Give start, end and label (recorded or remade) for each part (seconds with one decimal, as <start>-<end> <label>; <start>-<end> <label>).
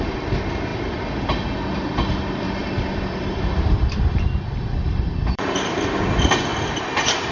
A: 0.0-0.7 recorded; 0.7-1.2 remade; 1.2-2.6 recorded; 2.6-5.9 remade; 5.9-6.5 recorded; 6.5-7.3 remade